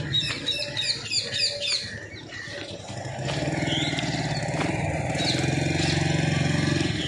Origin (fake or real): real